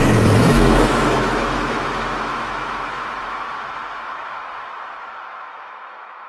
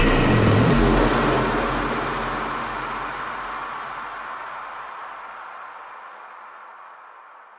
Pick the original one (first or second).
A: second